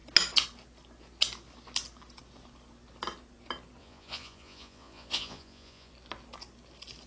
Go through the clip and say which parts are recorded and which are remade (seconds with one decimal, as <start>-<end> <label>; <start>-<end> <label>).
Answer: 0.0-3.8 recorded; 3.8-5.9 remade; 5.9-7.1 recorded